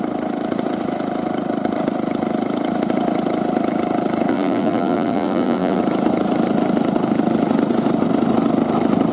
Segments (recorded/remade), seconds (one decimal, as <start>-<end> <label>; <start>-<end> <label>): 0.0-4.3 recorded; 4.3-5.8 remade; 5.8-9.1 recorded